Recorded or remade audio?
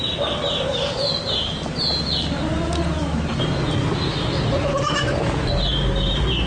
recorded